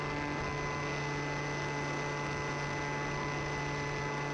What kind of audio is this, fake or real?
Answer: real